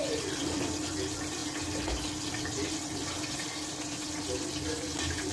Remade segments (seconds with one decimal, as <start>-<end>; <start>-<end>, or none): none